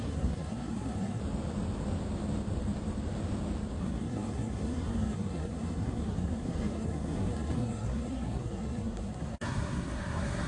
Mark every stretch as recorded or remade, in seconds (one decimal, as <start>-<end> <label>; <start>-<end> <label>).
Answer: 0.0-1.2 remade; 1.2-3.8 recorded; 3.8-10.5 remade